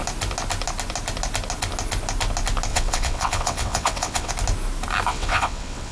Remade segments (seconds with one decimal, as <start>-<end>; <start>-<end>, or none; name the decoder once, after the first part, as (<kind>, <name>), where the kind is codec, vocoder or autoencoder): 2.7-4.3 (vocoder, WaveNeXt); 5.1-5.9